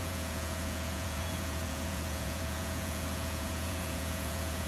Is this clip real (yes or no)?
no